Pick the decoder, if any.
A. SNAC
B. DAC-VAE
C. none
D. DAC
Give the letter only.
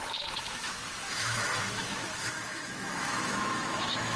B